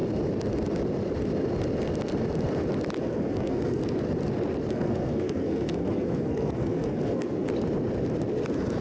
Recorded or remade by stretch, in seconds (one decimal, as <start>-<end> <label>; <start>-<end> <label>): 0.0-3.0 recorded; 3.0-3.8 remade; 3.8-4.7 recorded; 4.7-7.5 remade; 7.5-8.8 recorded